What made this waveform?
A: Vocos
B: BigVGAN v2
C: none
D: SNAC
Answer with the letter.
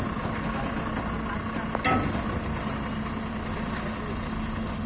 C